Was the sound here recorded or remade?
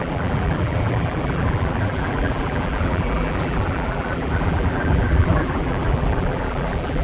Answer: remade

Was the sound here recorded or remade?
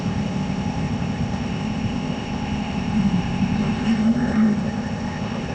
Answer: remade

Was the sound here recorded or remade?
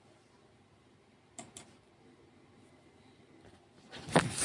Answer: recorded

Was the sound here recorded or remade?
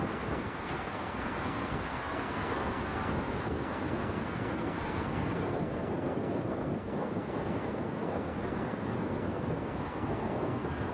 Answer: remade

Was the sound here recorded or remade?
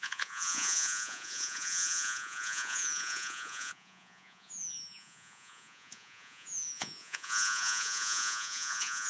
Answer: remade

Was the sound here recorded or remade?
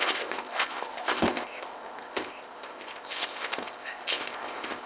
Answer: remade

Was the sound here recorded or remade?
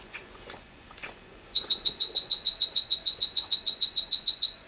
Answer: remade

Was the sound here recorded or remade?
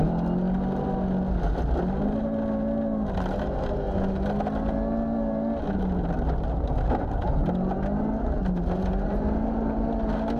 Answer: recorded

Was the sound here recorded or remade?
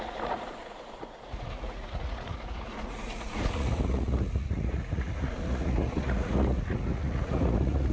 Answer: remade